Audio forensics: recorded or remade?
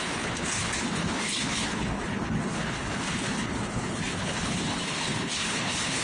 remade